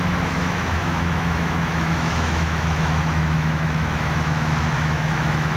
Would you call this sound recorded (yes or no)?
no